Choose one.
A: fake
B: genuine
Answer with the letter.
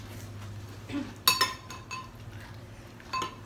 B